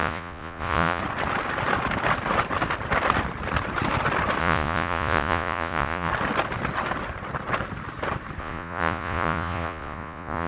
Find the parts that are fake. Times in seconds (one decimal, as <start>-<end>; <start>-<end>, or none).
0.0-1.0; 4.4-6.1; 8.4-10.5